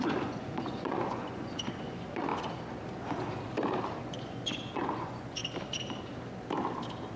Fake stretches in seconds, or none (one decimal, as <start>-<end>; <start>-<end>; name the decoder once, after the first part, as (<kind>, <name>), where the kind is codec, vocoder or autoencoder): 0.0-2.3 (vocoder, Vocos); 4.0-5.4